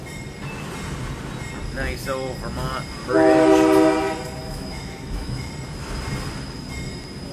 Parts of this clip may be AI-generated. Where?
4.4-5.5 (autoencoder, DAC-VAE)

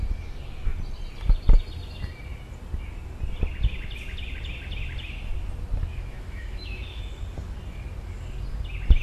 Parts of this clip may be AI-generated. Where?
5.9-7.0 (autoencoder, DAC-VAE)

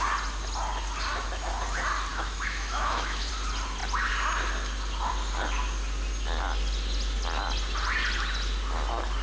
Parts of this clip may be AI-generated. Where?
2.1-3.3 (autoencoder, DAC-VAE)